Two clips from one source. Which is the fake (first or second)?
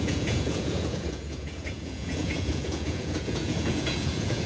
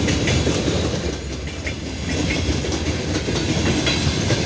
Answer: first